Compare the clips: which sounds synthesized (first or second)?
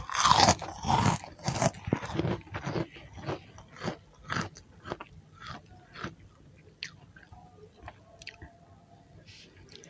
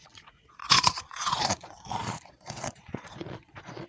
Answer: second